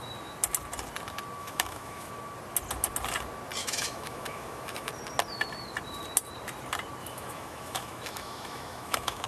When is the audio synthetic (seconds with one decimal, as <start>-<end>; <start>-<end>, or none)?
1.4-2.1; 3.6-4.9; 7.0-9.3